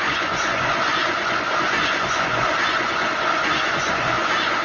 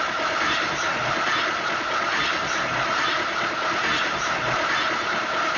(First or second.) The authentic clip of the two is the second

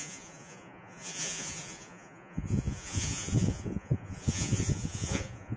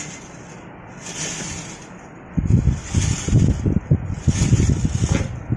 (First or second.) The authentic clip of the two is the second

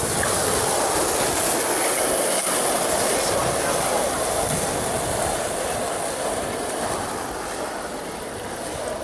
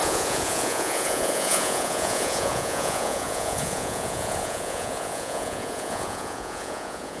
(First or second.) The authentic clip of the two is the first